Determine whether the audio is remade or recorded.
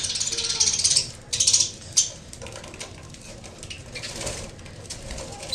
recorded